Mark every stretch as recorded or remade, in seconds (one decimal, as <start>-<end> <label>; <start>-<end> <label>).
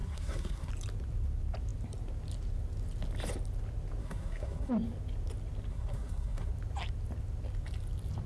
0.0-0.7 remade; 0.7-4.0 recorded; 4.0-4.7 remade; 4.7-5.7 recorded; 5.7-6.5 remade; 6.5-8.3 recorded